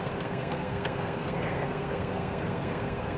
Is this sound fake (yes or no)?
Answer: yes